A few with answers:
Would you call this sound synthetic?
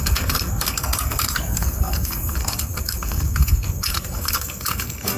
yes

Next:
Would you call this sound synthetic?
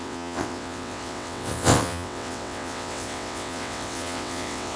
yes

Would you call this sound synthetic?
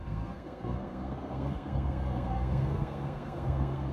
yes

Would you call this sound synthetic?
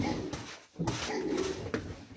no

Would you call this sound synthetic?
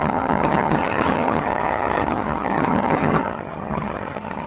yes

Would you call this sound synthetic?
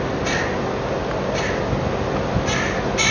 no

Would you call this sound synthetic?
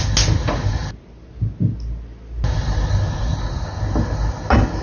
no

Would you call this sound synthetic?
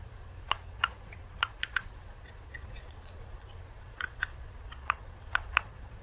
yes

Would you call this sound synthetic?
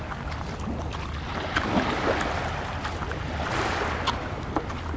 no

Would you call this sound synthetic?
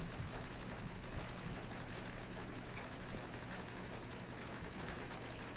yes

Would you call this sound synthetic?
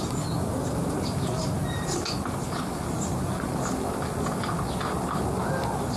no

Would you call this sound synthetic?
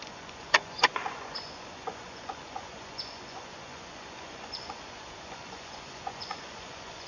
yes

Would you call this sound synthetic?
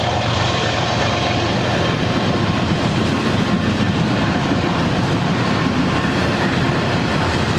yes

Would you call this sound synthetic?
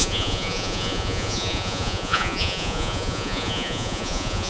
yes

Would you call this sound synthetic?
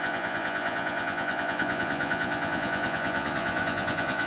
yes